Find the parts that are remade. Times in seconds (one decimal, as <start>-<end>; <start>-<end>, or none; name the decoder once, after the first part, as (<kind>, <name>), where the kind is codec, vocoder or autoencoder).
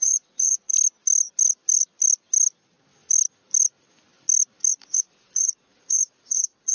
0.0-0.7 (vocoder, Vocos); 4.7-6.7